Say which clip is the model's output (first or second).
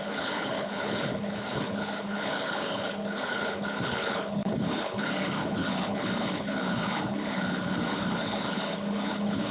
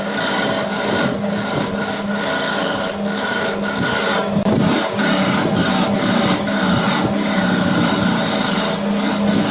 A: first